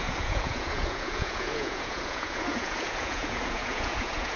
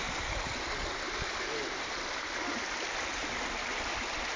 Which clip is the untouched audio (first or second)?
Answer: second